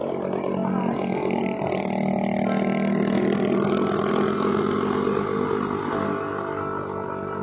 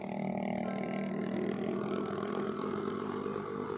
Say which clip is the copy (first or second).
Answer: second